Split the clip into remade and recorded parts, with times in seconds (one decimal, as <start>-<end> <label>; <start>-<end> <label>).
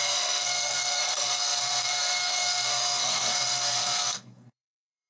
0.0-5.1 remade